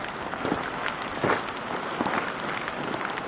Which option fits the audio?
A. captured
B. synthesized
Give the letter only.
A